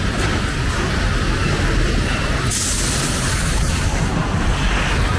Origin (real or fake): real